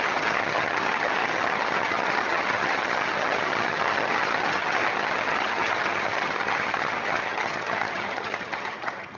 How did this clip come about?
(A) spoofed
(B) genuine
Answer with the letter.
A